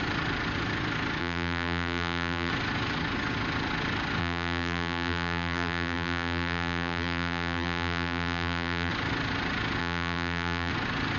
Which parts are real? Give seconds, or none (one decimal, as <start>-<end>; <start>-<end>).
0.0-1.2; 2.5-4.2; 8.9-9.8; 10.7-11.2